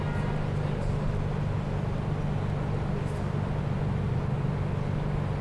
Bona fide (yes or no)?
yes